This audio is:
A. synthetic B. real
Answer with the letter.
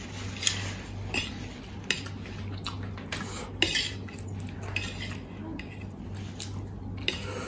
B